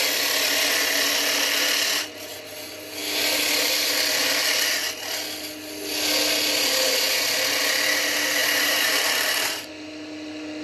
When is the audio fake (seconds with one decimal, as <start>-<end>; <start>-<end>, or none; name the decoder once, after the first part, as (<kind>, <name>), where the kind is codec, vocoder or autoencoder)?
8.4-9.7 (vocoder, BigVGAN v2)